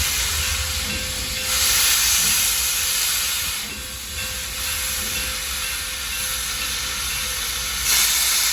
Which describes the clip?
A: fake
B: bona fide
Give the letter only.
B